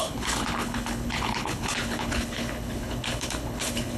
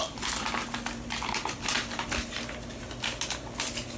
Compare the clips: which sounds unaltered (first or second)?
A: second